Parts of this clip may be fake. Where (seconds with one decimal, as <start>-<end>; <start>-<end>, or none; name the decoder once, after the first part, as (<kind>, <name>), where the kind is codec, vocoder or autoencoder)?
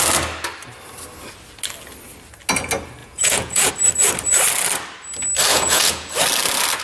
3.0-3.7 (vocoder, Vocos); 5.5-6.1